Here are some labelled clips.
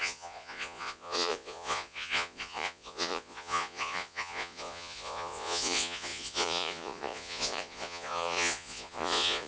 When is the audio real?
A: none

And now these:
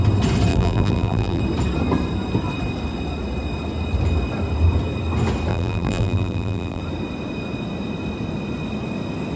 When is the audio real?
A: 0.0-0.5; 1.4-5.5; 6.8-9.4